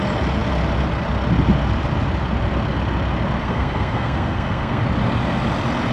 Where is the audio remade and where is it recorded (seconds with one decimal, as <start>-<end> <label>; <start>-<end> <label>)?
0.0-3.4 recorded; 3.4-4.8 remade; 4.8-5.9 recorded